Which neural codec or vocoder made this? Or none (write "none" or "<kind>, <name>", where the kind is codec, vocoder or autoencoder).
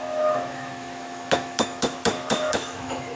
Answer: autoencoder, DAC-VAE